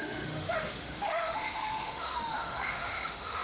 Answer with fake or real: fake